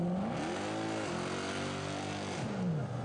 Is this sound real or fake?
real